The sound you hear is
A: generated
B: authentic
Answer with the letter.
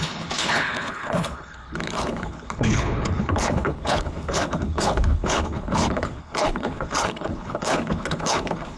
A